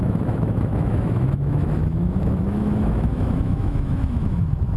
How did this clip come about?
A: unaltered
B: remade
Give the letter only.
B